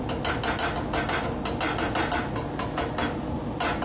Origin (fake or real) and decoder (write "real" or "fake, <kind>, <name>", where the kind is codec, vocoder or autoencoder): real